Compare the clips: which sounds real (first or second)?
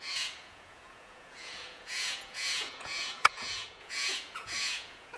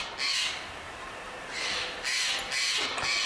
second